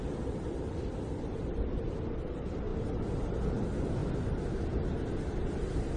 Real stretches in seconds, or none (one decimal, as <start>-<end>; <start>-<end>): 2.7-3.5; 4.0-5.2